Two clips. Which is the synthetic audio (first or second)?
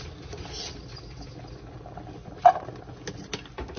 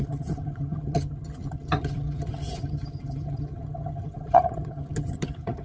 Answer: second